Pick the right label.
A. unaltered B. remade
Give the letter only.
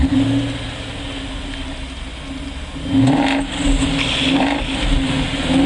A